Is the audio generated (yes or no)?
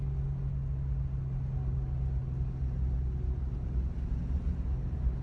no